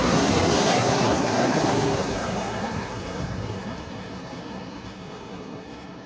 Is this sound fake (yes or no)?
yes